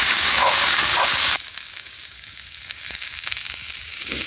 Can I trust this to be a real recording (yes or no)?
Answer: no